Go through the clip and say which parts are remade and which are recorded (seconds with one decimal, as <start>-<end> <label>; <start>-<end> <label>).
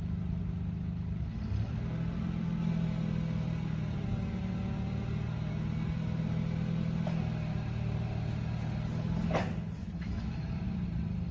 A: 0.0-9.8 recorded; 9.8-10.5 remade; 10.5-11.3 recorded